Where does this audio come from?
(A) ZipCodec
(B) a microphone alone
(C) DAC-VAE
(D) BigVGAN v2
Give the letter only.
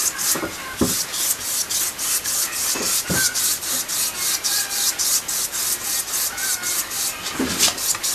B